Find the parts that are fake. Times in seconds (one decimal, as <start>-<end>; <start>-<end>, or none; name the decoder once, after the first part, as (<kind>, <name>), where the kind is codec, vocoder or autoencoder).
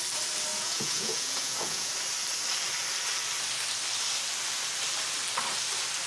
0.5-1.9 (vocoder, Vocos)